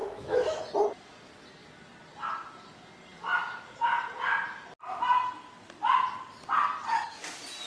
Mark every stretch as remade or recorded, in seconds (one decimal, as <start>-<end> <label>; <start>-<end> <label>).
0.0-0.6 remade; 0.6-7.7 recorded